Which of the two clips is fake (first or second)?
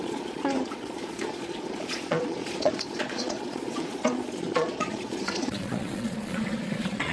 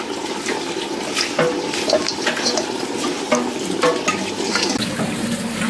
first